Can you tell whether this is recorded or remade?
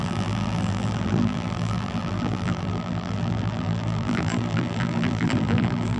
remade